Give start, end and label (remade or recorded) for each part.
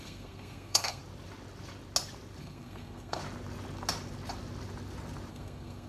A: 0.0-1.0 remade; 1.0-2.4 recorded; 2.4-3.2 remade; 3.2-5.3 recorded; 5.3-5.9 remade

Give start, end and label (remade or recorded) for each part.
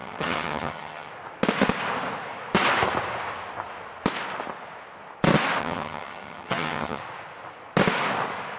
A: 0.0-1.1 remade; 1.1-5.6 recorded; 5.6-7.0 remade; 7.0-8.6 recorded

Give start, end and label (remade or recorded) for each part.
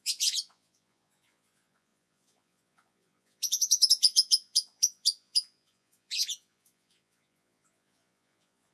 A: 0.0-8.7 remade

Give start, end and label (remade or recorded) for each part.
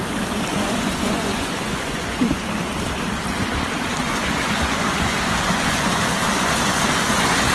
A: 0.0-0.5 recorded; 0.5-2.2 remade; 2.2-4.0 recorded; 4.0-7.5 remade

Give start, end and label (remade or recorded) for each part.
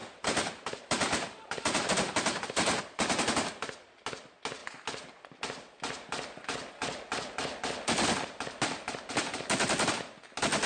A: 0.0-2.8 remade; 2.8-10.7 recorded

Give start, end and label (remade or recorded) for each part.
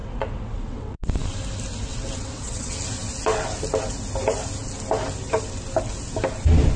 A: 0.0-1.0 remade; 1.0-1.9 recorded; 1.9-2.8 remade; 2.8-6.8 recorded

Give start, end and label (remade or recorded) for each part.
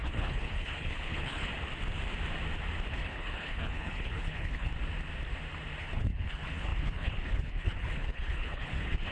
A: 0.0-1.5 remade; 1.5-2.9 recorded; 2.9-4.7 remade; 4.7-5.8 recorded; 5.8-9.1 remade